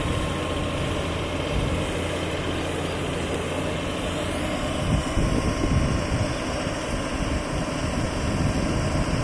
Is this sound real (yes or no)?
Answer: yes